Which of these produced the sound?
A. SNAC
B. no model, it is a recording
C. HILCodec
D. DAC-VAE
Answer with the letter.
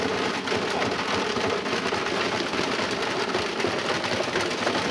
B